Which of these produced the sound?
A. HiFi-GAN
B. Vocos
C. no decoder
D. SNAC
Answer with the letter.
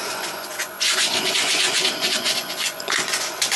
B